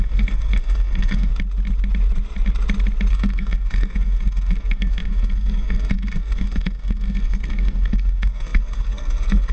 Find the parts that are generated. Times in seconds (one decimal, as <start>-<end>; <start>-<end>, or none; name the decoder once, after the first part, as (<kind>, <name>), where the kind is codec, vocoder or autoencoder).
0.0-1.3 (codec, SNAC); 3.1-9.5